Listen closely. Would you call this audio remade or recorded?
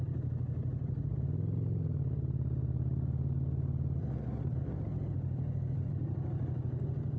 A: recorded